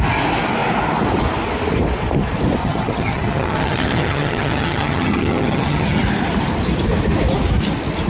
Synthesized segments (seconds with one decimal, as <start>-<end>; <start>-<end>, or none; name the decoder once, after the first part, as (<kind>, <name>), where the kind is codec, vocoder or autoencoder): 2.6-6.0 (vocoder, HiFi-GAN)